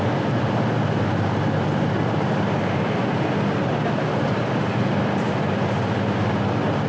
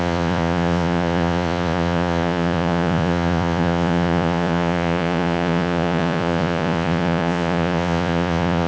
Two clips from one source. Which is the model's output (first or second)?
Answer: second